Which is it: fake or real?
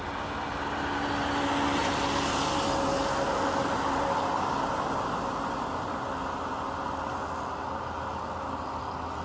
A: real